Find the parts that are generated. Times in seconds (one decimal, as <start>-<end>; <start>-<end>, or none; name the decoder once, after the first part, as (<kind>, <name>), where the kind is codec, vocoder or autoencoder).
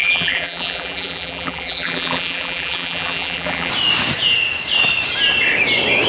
0.0-3.7 (vocoder, BigVGAN v2)